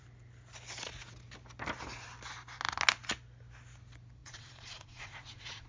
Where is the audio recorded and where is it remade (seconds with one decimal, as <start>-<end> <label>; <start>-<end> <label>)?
0.0-4.2 recorded; 4.2-5.7 remade